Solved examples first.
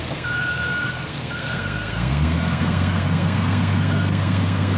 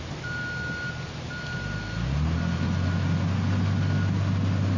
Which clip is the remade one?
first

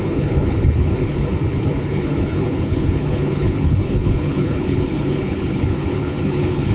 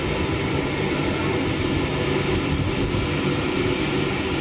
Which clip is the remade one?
first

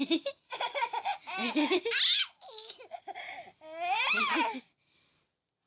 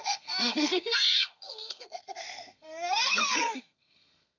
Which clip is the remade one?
second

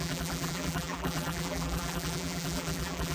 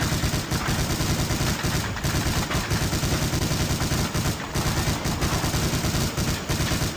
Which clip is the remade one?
first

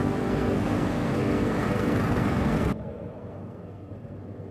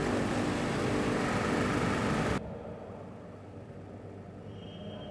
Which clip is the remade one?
first